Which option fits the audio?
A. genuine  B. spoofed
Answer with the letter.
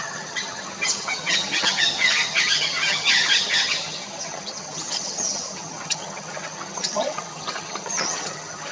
B